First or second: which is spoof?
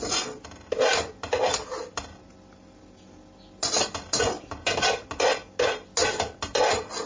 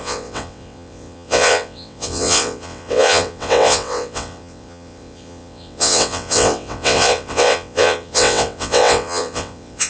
second